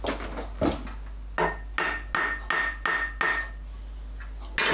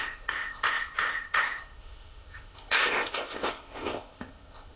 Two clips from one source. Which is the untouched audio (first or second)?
first